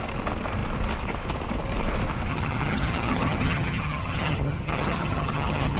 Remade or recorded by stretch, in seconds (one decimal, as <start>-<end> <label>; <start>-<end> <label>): 0.0-2.3 recorded; 2.3-5.8 remade

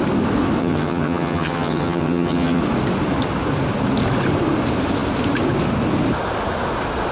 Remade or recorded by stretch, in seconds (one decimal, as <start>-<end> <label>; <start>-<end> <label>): 0.0-0.6 recorded; 0.6-2.6 remade; 2.6-7.1 recorded

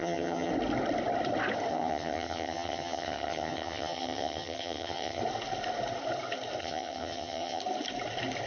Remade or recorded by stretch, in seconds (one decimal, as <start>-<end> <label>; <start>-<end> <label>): 0.0-0.5 remade; 0.5-1.7 recorded; 1.7-5.2 remade; 5.2-6.6 recorded; 6.6-7.6 remade; 7.6-8.5 recorded

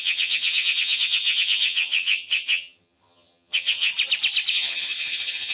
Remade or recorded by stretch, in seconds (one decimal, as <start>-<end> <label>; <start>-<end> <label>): 0.0-3.9 remade; 3.9-4.5 recorded; 4.5-5.5 remade

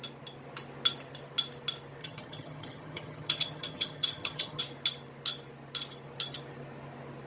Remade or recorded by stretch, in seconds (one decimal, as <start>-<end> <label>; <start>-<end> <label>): 0.0-2.0 recorded; 2.0-4.6 remade; 4.6-7.3 recorded